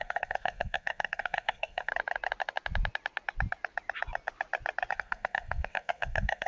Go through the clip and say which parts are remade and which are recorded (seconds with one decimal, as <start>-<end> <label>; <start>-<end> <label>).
0.0-1.9 remade; 1.9-4.9 recorded; 4.9-6.5 remade